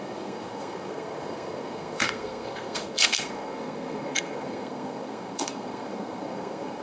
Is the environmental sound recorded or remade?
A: remade